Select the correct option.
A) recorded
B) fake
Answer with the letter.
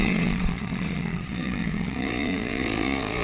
B